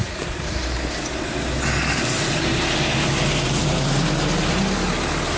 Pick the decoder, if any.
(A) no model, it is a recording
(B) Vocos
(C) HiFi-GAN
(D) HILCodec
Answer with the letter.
A